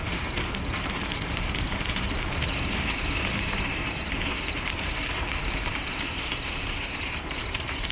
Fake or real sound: fake